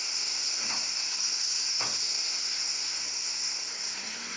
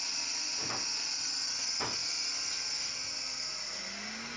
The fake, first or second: first